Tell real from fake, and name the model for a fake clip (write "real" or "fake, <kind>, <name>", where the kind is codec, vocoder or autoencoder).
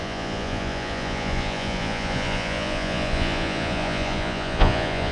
fake, vocoder, Vocos